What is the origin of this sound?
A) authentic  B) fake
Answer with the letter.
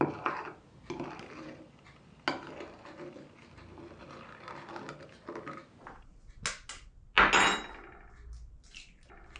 A